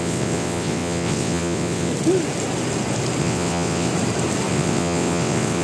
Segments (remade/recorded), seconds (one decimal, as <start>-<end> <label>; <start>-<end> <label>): 0.0-1.9 remade; 1.9-3.2 recorded; 3.2-3.9 remade; 3.9-4.5 recorded; 4.5-5.6 remade